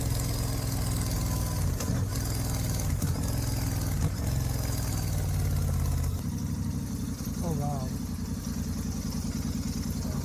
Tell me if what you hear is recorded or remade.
recorded